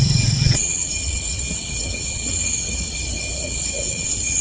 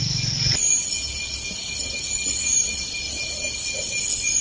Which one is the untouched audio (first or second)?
second